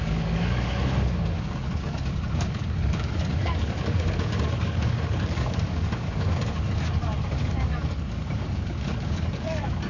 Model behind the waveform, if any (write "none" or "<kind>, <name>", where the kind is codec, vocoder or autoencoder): codec, DAC